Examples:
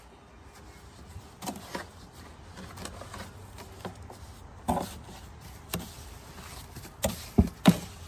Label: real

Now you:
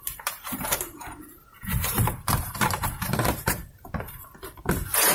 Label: fake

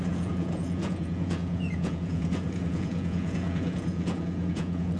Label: fake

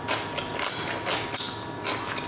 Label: real